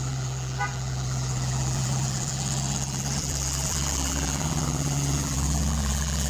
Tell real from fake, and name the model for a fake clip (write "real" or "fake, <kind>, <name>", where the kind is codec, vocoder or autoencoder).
fake, vocoder, BigVGAN v2